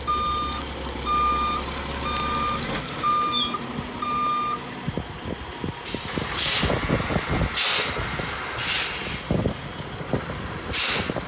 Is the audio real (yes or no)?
yes